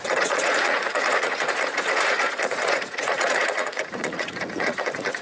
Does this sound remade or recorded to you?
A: remade